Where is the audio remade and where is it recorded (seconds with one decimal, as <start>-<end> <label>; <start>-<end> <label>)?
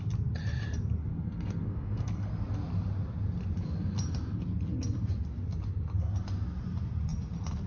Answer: 0.0-1.1 recorded; 1.1-2.3 remade; 2.3-7.7 recorded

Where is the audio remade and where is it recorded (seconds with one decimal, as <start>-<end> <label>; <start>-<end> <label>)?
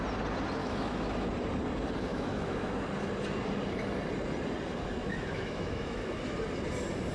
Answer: 0.0-0.6 recorded; 0.6-1.3 remade; 1.3-2.1 recorded; 2.1-2.7 remade; 2.7-5.0 recorded; 5.0-6.2 remade; 6.2-7.1 recorded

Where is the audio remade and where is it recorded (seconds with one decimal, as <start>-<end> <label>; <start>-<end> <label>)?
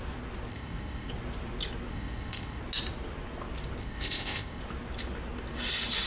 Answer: 0.0-0.5 recorded; 0.5-1.1 remade; 1.1-1.9 recorded; 1.9-2.6 remade; 2.6-3.8 recorded; 3.8-4.6 remade; 4.6-6.1 recorded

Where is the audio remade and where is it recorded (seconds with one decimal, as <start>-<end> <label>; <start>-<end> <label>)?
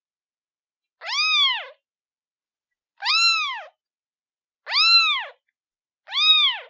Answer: 0.0-6.7 recorded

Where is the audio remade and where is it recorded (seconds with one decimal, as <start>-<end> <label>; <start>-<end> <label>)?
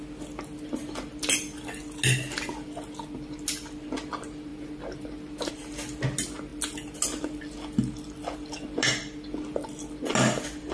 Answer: 0.0-10.7 recorded